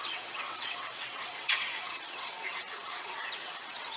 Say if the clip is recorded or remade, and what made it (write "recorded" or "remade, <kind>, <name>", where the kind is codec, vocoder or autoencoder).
remade, vocoder, WaveNeXt